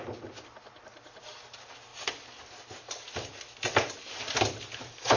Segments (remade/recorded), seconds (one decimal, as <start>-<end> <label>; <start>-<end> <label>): 0.0-5.2 recorded